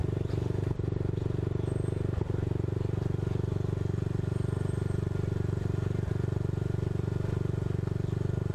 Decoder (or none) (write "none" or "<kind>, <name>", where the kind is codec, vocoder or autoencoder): none